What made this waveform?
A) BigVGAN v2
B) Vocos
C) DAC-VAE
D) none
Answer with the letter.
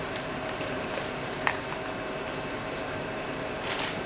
A